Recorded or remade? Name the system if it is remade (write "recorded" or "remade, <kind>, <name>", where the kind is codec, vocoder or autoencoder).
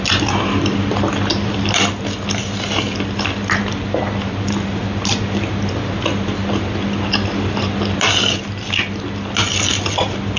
recorded